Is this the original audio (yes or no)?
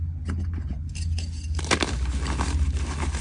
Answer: yes